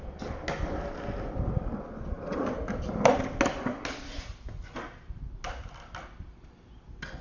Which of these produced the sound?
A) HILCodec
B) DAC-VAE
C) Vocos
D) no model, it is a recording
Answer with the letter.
D